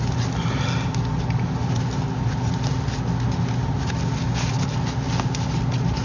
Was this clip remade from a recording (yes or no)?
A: no